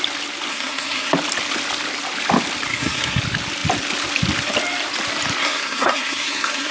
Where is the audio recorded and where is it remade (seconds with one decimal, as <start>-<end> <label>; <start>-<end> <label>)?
0.0-0.5 recorded; 0.5-1.1 remade; 1.1-2.7 recorded; 2.7-3.2 remade; 3.2-5.4 recorded; 5.4-6.7 remade